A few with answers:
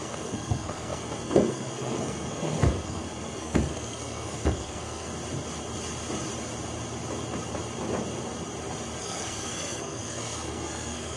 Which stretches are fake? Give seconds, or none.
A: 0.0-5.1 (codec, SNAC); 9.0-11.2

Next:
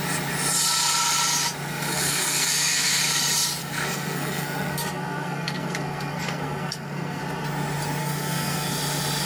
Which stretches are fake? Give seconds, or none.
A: 1.7-3.0 (codec, SNAC); 3.6-7.2; 8.0-8.7

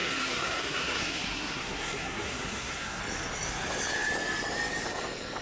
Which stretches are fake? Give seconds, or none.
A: 0.0-3.0 (codec, SNAC)

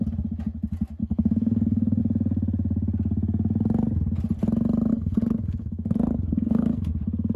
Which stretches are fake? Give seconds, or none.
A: 1.0-2.0 (codec, SNAC); 4.9-6.9